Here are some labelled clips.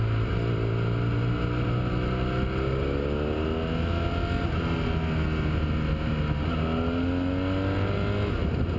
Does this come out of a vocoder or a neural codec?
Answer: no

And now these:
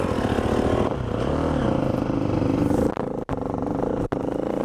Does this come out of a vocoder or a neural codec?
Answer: no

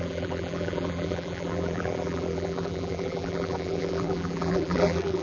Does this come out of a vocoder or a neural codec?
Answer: yes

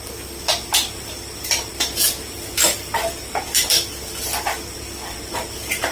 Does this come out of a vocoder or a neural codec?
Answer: no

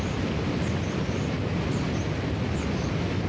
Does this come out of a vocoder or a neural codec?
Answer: no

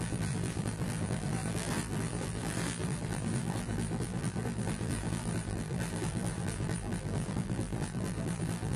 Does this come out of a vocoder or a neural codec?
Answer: yes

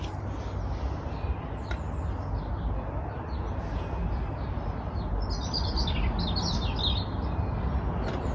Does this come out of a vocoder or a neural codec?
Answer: no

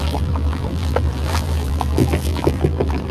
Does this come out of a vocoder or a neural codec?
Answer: yes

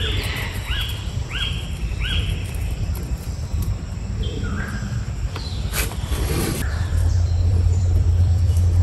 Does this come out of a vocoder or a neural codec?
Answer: yes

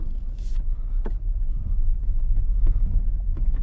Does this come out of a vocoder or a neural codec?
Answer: no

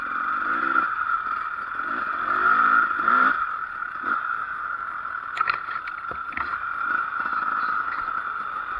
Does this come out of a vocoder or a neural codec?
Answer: yes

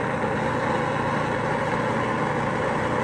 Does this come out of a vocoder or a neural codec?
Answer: no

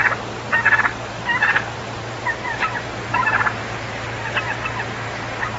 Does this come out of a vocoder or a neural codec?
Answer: no